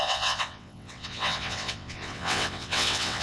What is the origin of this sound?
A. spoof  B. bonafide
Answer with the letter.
A